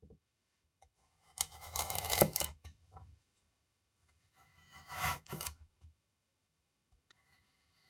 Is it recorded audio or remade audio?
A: remade